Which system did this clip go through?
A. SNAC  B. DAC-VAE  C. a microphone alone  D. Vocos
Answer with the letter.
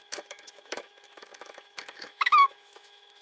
B